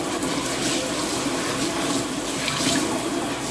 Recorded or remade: recorded